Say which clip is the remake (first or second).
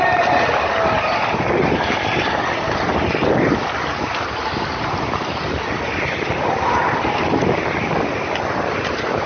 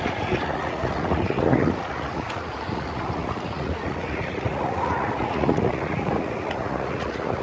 second